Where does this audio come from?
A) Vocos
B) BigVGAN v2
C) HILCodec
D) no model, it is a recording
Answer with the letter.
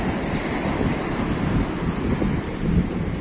B